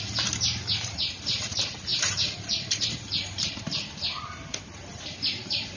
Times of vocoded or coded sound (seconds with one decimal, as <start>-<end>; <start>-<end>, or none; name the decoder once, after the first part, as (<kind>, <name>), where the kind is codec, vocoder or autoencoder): 0.0-5.8 (vocoder, BigVGAN v2)